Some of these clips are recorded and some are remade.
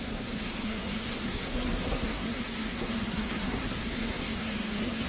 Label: remade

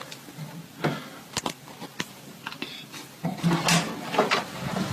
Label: recorded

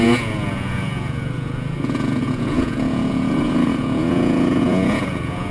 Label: remade